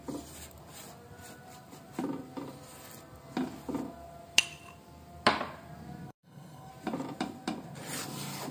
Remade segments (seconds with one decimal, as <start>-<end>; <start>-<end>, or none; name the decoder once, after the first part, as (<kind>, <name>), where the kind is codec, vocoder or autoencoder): 6.1-6.7 (codec, SNAC)